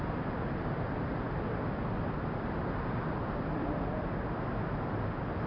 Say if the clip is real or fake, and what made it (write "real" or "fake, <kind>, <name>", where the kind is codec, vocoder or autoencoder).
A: real